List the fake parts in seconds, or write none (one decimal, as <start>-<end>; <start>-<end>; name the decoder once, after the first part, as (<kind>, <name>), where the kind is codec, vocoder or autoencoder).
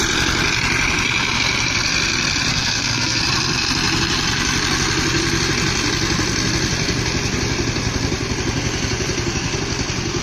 2.5-3.2 (codec, SNAC)